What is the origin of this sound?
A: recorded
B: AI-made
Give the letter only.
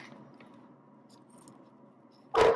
A